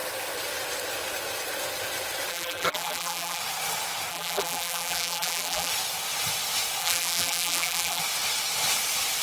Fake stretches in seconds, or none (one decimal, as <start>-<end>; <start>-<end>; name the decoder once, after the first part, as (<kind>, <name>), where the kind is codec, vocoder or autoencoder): 2.3-3.4 (vocoder, BigVGAN v2); 4.1-5.7; 6.8-8.0